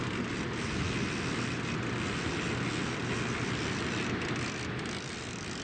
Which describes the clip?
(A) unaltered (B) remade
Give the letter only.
A